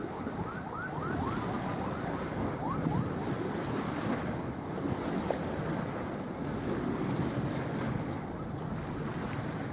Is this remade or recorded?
recorded